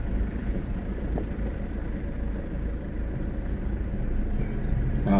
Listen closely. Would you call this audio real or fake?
real